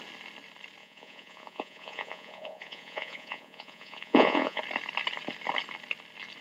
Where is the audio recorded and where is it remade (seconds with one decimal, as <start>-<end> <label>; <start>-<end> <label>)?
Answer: 0.0-0.8 recorded; 0.8-4.6 remade; 4.6-6.4 recorded